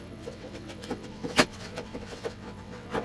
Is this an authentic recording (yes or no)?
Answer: no